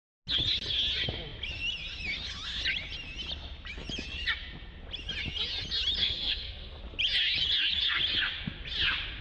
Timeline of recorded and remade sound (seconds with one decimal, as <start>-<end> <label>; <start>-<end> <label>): 0.0-6.0 recorded; 6.0-6.8 remade; 6.8-9.2 recorded